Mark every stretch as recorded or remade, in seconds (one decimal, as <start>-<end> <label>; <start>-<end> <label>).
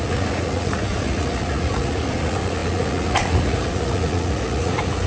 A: 0.0-5.1 remade